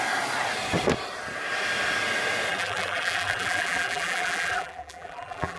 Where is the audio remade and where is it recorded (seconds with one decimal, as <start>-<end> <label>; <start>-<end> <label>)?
0.0-2.5 recorded; 2.5-5.6 remade

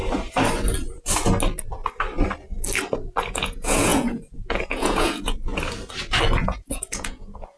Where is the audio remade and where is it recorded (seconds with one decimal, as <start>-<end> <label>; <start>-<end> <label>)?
0.0-3.3 recorded; 3.3-5.5 remade; 5.5-6.4 recorded; 6.4-7.6 remade